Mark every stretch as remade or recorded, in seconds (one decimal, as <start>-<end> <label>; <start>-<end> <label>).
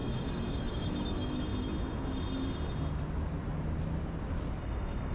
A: 0.0-1.5 remade; 1.5-4.6 recorded; 4.6-5.1 remade